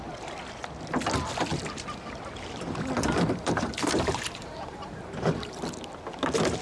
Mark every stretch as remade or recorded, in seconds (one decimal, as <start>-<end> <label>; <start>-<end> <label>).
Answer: 0.0-1.5 recorded; 1.5-5.5 remade; 5.5-6.6 recorded